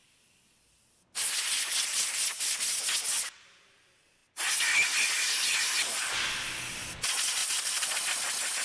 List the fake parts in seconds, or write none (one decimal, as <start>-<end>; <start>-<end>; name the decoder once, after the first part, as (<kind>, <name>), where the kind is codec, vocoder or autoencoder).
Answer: none